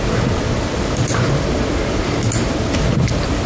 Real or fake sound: fake